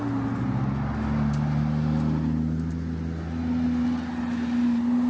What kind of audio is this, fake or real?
real